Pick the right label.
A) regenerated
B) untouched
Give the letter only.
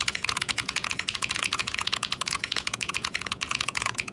A